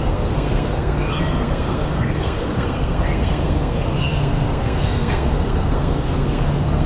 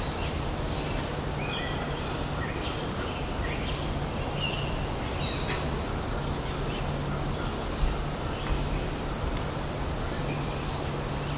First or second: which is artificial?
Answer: first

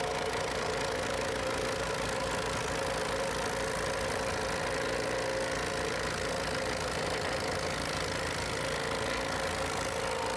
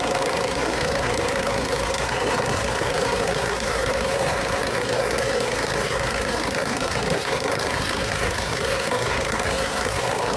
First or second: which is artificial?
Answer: second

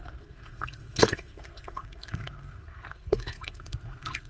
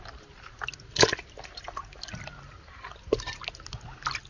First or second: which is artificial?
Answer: first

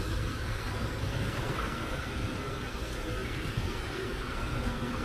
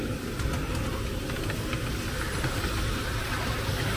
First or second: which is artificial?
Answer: first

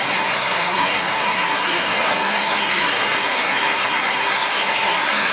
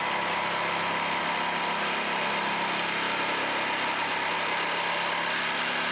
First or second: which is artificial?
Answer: first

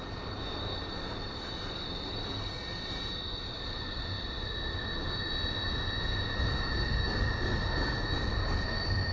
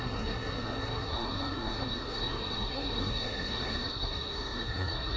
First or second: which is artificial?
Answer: second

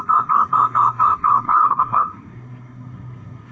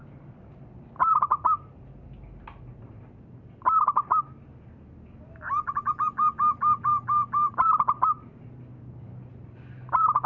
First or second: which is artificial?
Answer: first